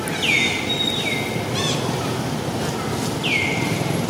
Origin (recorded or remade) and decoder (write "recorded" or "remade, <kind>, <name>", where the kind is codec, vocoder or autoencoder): recorded